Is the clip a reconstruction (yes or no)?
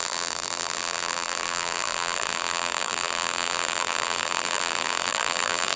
yes